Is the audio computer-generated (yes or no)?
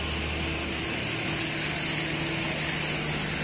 no